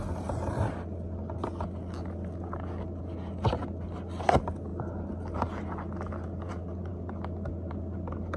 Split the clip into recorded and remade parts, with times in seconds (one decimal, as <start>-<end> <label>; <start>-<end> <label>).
0.0-8.4 recorded